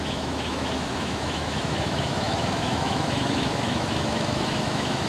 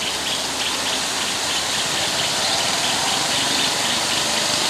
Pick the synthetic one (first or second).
first